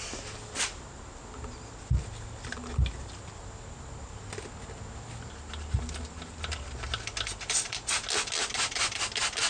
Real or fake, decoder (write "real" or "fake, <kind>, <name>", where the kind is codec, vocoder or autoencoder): real